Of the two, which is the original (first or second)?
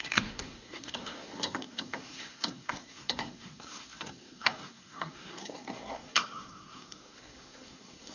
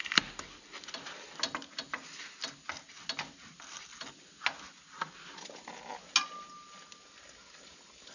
second